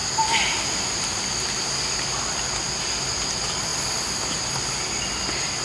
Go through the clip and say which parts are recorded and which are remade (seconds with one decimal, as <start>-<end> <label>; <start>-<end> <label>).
0.0-5.6 recorded